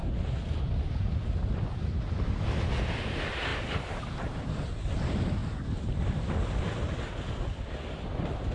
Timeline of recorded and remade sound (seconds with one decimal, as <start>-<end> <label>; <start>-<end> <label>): 0.0-8.5 recorded